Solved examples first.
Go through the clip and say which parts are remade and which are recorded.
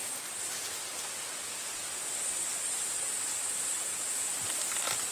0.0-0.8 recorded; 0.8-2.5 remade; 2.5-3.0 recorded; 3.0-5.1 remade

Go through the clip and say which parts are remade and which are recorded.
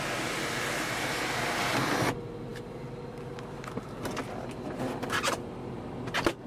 0.0-6.5 recorded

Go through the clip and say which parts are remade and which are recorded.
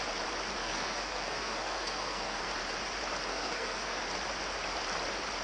0.0-0.6 recorded; 0.6-2.5 remade; 2.5-3.3 recorded; 3.3-4.0 remade; 4.0-5.4 recorded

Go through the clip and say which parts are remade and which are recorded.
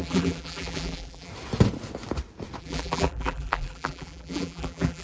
0.0-1.3 remade; 1.3-2.6 recorded; 2.6-5.0 remade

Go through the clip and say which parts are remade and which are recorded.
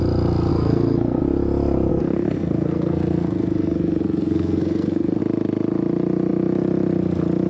0.0-0.5 recorded; 0.5-1.2 remade; 1.2-1.9 recorded; 1.9-5.2 remade; 5.2-7.5 recorded